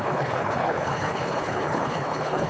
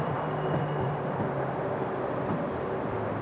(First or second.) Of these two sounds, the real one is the second